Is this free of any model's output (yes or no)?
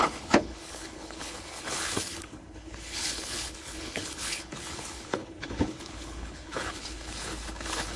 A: no